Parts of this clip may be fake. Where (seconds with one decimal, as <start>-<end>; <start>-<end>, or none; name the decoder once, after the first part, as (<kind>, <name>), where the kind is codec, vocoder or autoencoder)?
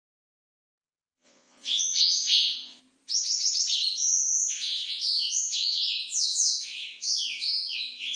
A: 0.8-2.8 (vocoder, Vocos); 4.0-8.2